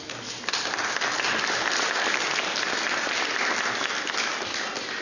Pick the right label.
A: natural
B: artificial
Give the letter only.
A